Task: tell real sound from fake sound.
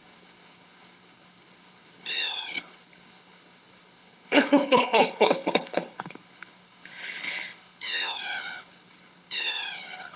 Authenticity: fake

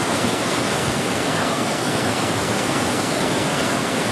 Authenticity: fake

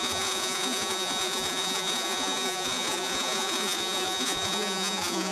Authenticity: fake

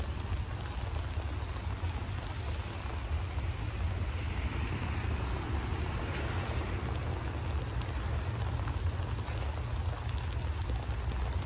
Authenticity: real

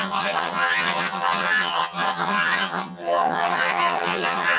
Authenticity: fake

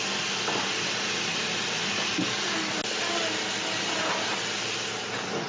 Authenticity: real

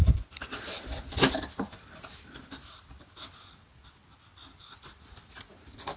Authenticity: real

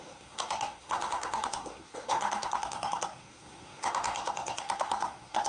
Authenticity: fake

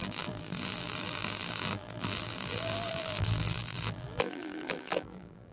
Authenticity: fake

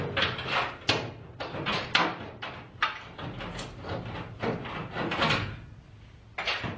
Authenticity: real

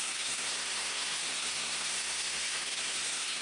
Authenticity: fake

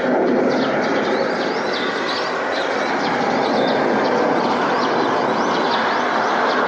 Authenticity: real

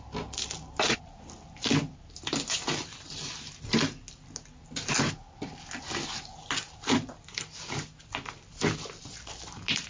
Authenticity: real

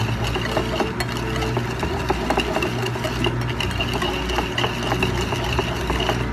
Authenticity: real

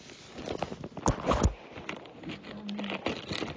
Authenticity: real